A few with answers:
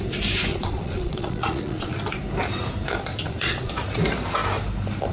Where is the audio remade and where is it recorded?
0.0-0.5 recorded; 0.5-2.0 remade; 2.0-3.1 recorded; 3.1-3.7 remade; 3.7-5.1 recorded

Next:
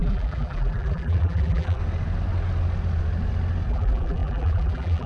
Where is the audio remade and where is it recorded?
0.0-1.8 remade; 1.8-3.7 recorded; 3.7-5.1 remade

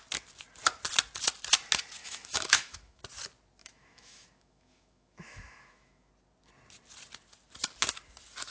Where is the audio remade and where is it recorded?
0.0-2.0 recorded; 2.0-3.0 remade; 3.0-3.6 recorded; 3.6-6.1 remade; 6.1-8.5 recorded